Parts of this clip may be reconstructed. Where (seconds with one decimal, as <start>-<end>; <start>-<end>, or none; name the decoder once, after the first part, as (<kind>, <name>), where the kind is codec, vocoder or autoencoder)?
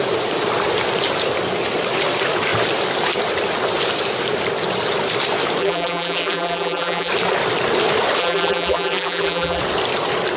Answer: 5.6-7.1 (vocoder, BigVGAN v2); 8.2-9.6